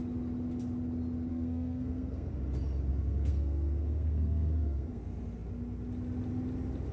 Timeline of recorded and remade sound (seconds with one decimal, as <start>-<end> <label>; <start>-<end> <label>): 0.0-1.3 recorded; 1.3-2.3 remade; 2.3-2.9 recorded; 2.9-5.0 remade; 5.0-6.9 recorded